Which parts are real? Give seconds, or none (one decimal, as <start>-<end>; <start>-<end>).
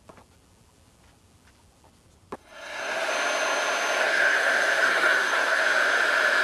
0.0-2.4; 3.1-4.0; 5.6-6.4